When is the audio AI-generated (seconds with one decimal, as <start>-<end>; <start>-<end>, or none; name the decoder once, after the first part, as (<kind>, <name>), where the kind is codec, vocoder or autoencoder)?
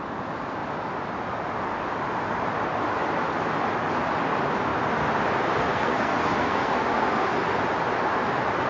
5.7-7.3 (codec, SNAC)